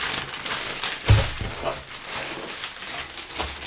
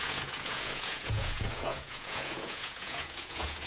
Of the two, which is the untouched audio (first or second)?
first